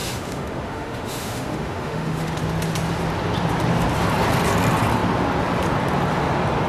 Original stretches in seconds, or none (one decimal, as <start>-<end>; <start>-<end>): 2.3-6.7